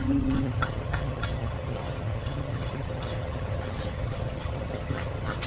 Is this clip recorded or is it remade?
remade